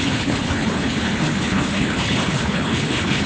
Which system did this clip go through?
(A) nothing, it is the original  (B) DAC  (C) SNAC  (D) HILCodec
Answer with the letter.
D